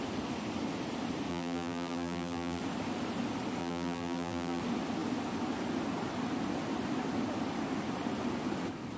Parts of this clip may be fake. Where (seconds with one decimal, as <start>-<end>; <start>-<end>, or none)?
1.3-2.6; 3.6-4.6